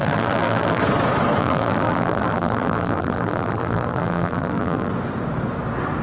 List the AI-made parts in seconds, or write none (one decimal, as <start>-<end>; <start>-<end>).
0.0-0.8; 1.4-4.9